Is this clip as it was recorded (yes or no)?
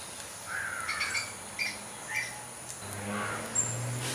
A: yes